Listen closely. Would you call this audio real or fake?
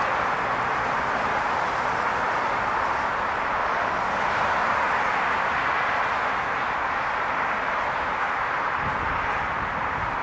real